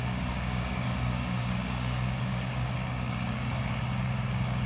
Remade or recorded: remade